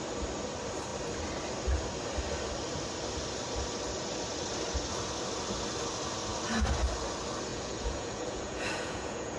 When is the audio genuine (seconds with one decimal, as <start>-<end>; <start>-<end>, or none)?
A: 0.0-7.5